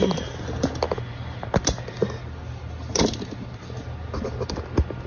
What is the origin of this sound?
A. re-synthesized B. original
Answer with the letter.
B